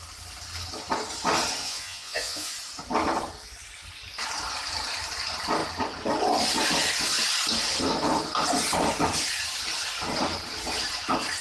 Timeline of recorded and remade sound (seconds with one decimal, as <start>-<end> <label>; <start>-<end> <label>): 0.0-1.6 recorded; 1.6-2.5 remade; 2.5-11.4 recorded